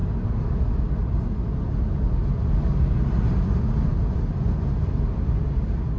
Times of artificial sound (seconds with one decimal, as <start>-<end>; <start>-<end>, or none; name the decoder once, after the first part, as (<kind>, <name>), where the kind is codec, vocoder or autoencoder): none

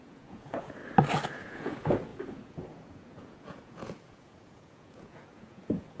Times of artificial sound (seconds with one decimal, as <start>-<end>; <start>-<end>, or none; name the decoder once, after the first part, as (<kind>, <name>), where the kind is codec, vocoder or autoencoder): 0.0-0.8 (vocoder, Vocos); 1.3-6.0